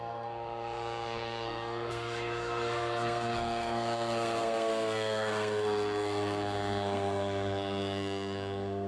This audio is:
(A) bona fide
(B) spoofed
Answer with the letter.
B